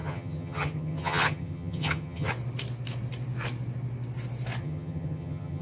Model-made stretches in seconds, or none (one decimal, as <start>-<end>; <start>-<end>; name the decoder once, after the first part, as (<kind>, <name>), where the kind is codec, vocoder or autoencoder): 0.0-2.3 (vocoder, HiFi-GAN); 4.6-5.6